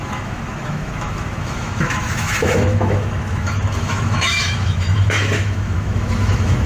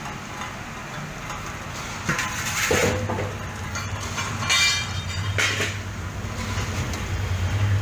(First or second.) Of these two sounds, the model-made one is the first